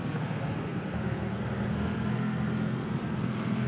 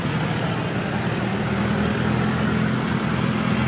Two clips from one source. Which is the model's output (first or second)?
first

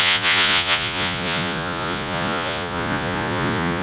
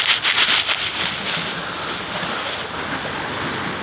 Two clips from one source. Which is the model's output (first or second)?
first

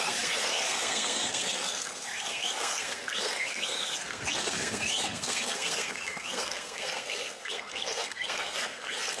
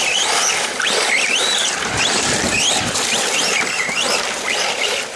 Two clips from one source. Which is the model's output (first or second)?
first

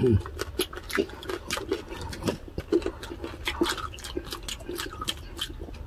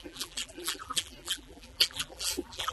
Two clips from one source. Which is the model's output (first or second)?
second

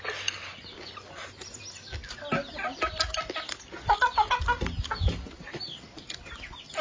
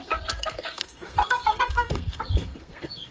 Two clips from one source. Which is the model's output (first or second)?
second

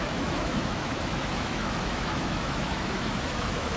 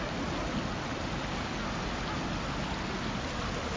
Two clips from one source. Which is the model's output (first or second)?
first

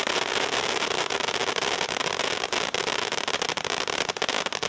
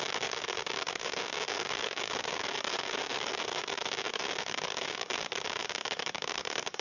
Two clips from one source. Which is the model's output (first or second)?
second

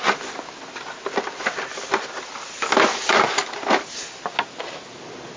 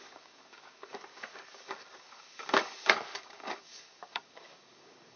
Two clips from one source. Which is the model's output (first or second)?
second